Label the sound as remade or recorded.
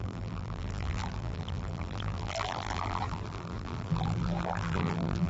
remade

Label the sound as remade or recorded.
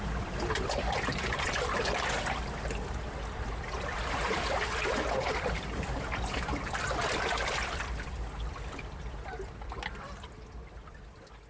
remade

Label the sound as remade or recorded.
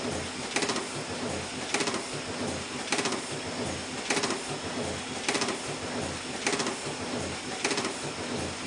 recorded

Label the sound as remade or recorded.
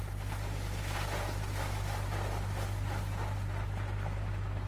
recorded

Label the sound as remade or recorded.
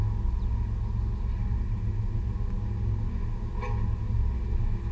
recorded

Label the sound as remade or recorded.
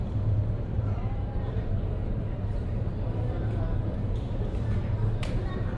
remade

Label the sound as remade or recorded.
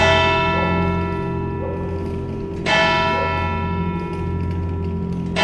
recorded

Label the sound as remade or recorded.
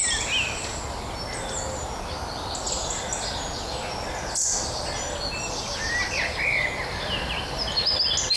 recorded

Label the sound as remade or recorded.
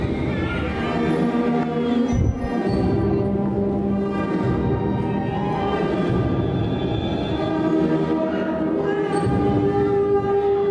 recorded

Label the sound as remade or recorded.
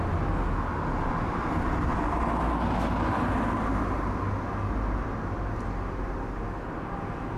recorded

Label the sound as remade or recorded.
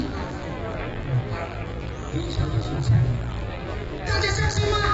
remade